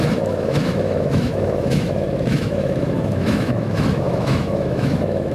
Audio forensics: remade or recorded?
remade